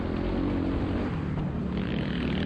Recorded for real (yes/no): yes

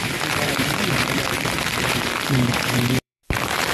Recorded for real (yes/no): no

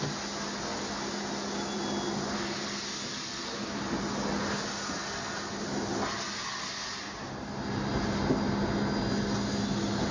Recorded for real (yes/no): yes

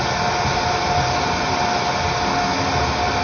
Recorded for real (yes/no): yes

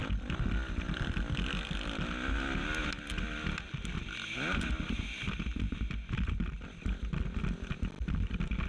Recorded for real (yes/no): yes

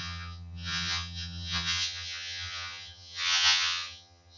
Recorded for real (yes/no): no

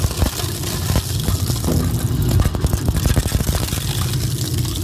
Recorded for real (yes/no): yes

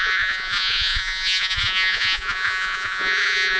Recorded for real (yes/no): no